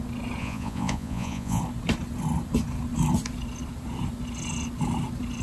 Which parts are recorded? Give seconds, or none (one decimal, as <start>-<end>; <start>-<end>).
0.0-0.4; 1.6-5.4